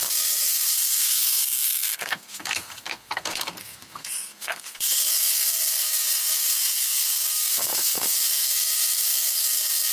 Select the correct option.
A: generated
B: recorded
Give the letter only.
A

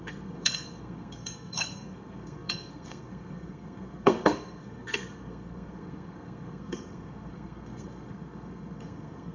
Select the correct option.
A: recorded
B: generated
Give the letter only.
B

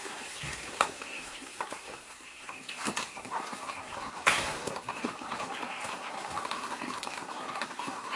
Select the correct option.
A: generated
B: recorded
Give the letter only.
A